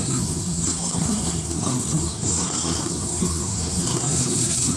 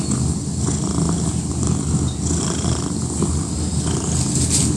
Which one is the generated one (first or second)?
first